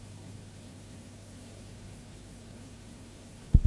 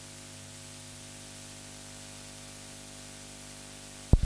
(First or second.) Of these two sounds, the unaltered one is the second